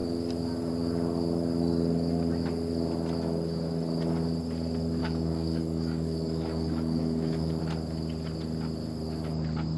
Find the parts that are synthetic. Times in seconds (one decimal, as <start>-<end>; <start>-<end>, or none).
5.0-7.6